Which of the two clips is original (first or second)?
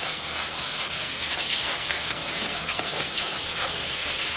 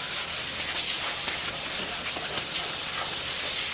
second